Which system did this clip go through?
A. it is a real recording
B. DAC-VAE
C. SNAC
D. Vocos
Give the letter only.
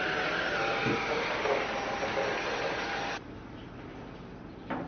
A